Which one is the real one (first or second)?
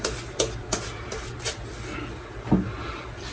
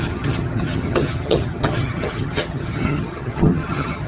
first